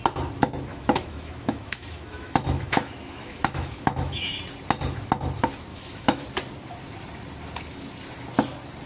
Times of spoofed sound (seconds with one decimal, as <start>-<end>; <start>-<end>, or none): 0.7-4.4; 5.7-6.2